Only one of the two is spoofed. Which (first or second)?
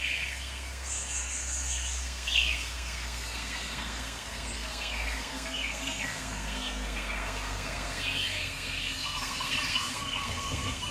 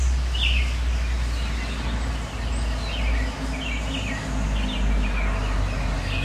first